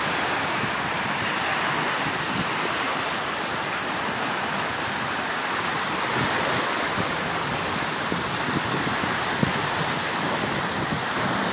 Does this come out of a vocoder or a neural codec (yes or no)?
no